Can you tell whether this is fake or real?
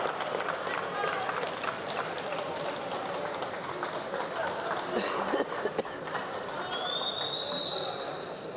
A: real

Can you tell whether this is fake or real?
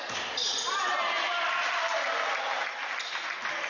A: real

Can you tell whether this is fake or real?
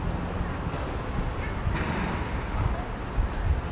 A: real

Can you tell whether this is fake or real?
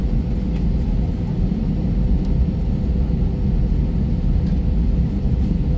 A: real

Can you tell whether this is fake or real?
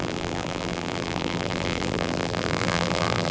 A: fake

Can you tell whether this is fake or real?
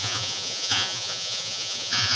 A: fake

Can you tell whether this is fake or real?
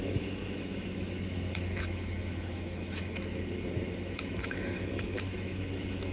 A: fake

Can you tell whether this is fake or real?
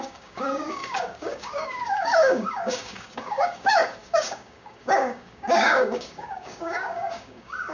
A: fake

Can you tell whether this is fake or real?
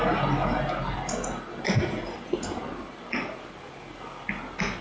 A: real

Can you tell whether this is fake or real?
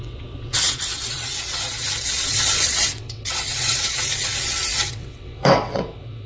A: fake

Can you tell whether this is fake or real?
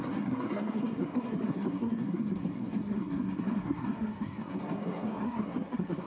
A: fake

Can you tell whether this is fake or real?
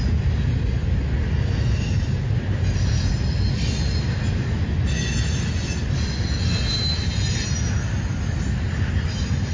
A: real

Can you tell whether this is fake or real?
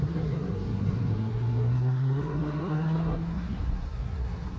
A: fake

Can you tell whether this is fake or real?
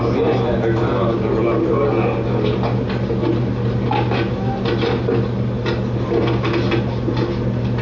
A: real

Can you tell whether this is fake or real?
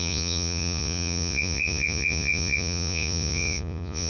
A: fake